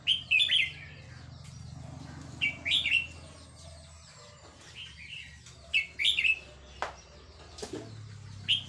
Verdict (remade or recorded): recorded